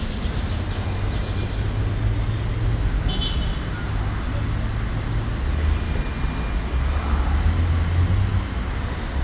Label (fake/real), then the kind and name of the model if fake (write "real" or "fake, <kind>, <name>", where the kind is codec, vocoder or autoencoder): real